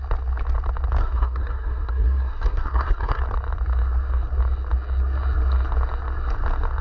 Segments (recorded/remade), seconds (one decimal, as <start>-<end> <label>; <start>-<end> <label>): 0.0-1.0 recorded; 1.0-3.2 remade; 3.2-6.8 recorded